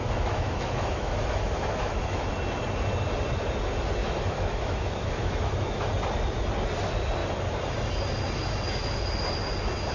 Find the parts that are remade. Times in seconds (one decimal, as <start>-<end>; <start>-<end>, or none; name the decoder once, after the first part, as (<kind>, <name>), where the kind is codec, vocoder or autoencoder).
0.0-2.3 (autoencoder, DAC-VAE); 4.0-5.9